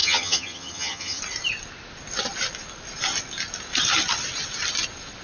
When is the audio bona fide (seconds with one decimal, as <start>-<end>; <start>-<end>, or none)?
1.2-5.2